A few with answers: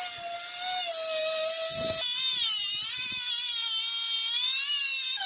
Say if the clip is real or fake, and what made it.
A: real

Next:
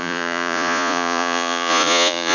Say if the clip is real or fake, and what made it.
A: fake, vocoder, Vocos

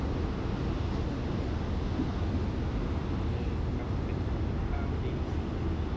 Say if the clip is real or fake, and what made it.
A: real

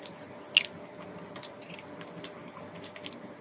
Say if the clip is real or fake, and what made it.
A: real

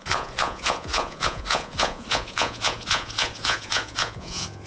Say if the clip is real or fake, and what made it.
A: fake, vocoder, Vocos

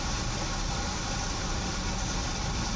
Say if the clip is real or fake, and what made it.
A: real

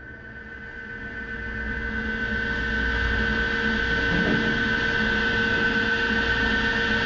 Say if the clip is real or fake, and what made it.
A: real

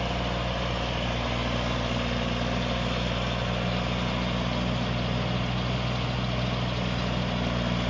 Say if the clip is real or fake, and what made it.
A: real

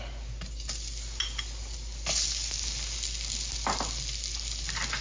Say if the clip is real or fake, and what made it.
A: real